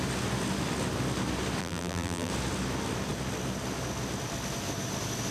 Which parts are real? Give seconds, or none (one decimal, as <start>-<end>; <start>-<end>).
0.0-1.6; 2.3-5.3